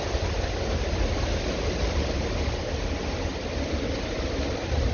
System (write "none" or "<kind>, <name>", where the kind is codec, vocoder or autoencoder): none